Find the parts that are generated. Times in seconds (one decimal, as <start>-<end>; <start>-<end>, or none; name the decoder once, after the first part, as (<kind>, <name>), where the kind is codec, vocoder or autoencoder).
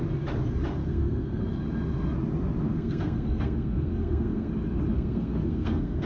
0.8-1.4 (codec, SNAC); 2.7-4.5; 4.9-6.1